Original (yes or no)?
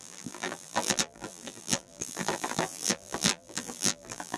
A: no